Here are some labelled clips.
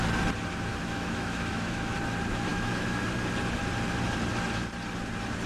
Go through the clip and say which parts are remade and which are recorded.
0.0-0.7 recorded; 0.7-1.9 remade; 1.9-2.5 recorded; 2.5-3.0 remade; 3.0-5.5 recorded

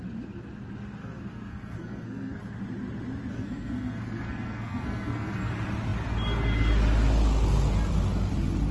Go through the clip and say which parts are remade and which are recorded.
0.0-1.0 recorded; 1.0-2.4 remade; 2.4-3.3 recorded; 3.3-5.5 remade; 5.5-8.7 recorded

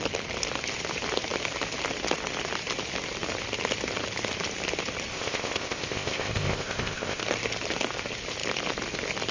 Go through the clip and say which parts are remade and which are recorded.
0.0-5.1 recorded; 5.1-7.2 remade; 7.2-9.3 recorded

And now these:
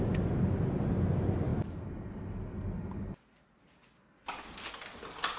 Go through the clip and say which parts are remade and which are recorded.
0.0-5.4 recorded

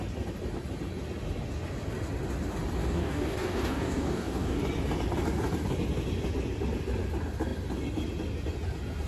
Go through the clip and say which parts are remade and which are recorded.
0.0-2.8 recorded; 2.8-4.6 remade; 4.6-9.1 recorded